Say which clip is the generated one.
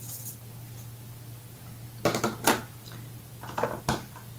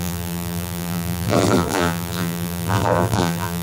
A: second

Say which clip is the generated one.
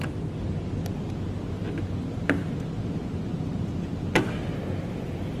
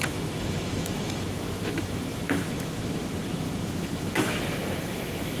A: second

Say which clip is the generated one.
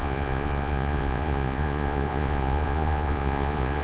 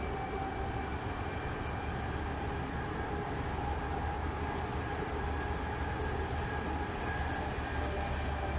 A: first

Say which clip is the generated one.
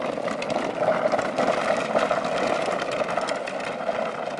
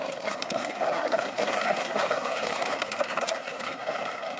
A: second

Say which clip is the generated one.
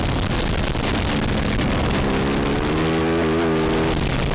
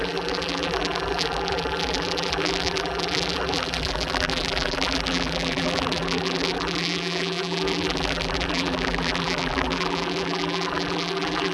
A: second